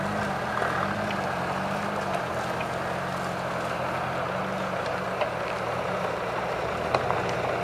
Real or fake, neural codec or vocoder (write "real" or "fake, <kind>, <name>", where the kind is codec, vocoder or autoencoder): real